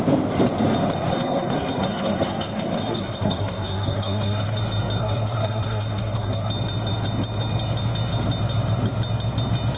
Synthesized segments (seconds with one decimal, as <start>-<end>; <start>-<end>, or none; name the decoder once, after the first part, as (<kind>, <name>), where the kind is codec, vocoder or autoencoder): 1.1-4.6 (codec, SNAC); 5.0-6.5